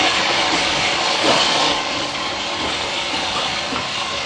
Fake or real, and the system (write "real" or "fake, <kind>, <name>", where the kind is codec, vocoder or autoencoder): fake, codec, DAC